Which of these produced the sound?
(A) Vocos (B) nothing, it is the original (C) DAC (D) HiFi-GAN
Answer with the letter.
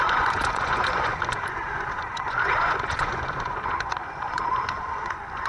A